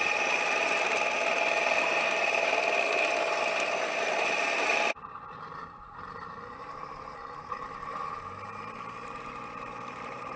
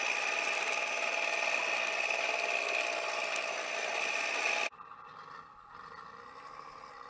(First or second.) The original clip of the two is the second